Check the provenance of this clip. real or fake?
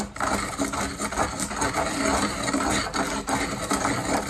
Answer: real